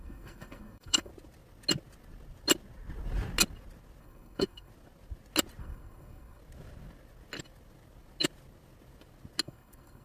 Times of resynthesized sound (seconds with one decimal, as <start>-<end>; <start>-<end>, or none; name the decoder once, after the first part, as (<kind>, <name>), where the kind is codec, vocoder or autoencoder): 0.0-1.1 (codec, SNAC); 4.0-4.7; 5.6-6.4; 9.4-10.0